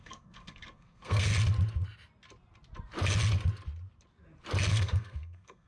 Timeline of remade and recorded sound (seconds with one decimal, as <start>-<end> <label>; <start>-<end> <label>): 0.0-1.3 remade; 1.3-4.7 recorded; 4.7-5.7 remade